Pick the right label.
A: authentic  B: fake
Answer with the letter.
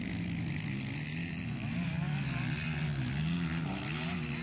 A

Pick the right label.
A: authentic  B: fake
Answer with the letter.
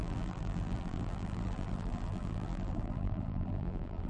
B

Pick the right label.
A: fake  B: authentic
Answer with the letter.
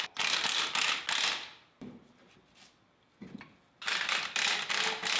B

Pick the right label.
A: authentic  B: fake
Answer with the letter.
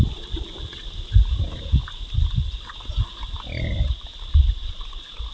A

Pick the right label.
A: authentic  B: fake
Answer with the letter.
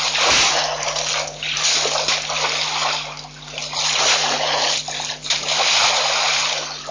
A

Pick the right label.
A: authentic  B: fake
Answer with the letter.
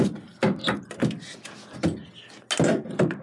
A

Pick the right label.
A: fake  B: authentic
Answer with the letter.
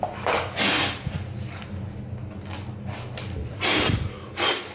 B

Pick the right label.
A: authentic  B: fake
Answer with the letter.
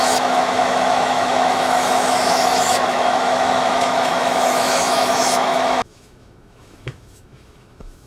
B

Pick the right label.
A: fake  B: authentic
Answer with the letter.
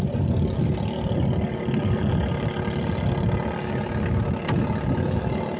B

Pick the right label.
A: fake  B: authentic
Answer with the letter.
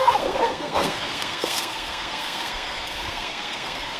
A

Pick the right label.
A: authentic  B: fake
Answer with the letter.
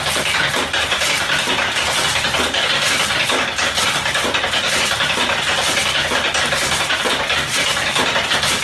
A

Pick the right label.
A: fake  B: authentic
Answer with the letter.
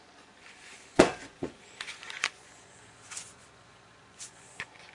A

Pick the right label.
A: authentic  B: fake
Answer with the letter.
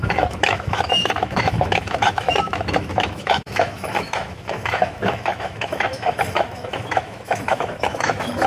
B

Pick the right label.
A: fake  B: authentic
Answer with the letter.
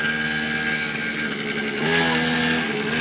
B